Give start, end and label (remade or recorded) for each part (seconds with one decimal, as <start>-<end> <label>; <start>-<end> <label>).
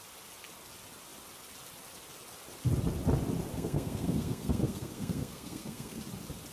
0.0-3.5 recorded; 3.5-6.0 remade; 6.0-6.5 recorded